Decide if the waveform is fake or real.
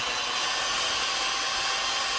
real